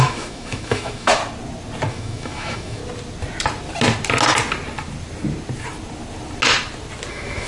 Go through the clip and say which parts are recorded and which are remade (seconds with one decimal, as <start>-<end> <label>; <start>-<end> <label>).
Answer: 0.0-1.2 remade; 1.2-1.9 recorded; 1.9-2.8 remade; 2.8-7.1 recorded; 7.1-7.5 remade